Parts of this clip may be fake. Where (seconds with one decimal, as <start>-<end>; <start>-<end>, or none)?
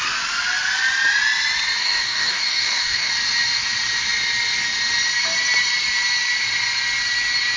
1.8-3.1